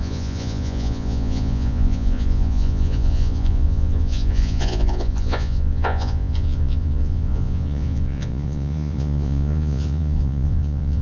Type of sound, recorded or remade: remade